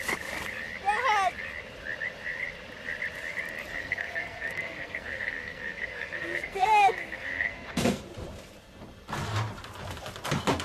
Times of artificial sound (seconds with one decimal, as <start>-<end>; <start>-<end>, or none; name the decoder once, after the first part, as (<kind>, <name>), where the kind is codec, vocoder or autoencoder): 3.8-8.0 (codec, SNAC)